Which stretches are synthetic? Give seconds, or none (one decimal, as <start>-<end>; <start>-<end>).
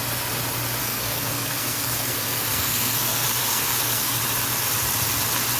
0.8-4.2